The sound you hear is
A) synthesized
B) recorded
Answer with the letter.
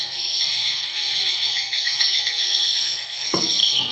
A